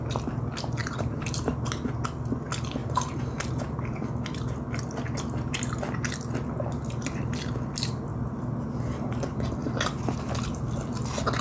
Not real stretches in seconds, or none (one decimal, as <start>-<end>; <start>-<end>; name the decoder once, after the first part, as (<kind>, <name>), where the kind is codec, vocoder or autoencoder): 0.8-1.4 (vocoder, BigVGAN v2); 2.8-3.5